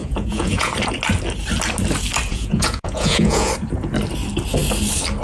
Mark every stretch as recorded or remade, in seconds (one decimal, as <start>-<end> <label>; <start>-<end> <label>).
0.0-0.7 remade; 0.7-2.3 recorded; 2.3-3.5 remade; 3.5-5.2 recorded